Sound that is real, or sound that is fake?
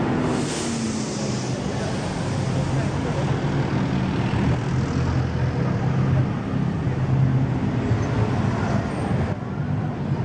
real